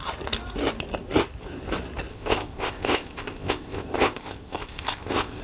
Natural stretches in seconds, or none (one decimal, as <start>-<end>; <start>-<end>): 0.0-2.1